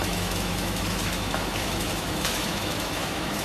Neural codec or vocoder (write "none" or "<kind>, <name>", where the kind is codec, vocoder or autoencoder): autoencoder, DAC-VAE